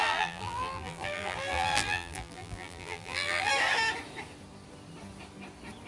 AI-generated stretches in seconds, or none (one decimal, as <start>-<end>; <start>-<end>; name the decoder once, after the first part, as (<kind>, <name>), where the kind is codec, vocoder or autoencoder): 0.0-3.5 (vocoder, BigVGAN v2)